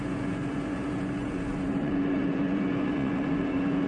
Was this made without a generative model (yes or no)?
no